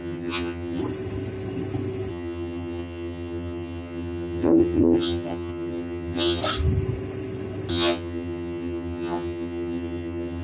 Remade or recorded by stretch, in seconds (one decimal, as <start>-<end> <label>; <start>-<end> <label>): 0.0-0.8 remade; 0.8-2.1 recorded; 2.1-6.4 remade; 6.4-7.7 recorded; 7.7-10.4 remade